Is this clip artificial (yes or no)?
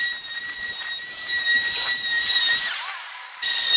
no